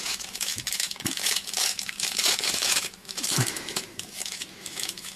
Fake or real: fake